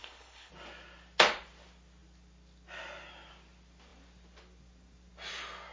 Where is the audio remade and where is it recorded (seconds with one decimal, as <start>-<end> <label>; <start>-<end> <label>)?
0.0-0.5 remade; 0.5-5.7 recorded